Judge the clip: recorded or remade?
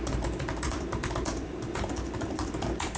remade